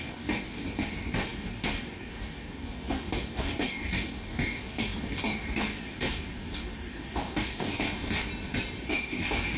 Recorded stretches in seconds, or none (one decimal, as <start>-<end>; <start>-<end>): 8.3-8.9